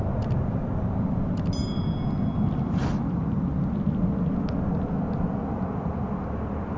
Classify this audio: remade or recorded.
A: recorded